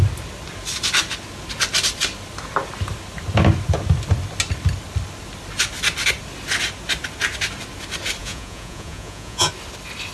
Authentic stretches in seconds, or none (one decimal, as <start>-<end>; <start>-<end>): 0.0-8.2; 9.5-10.1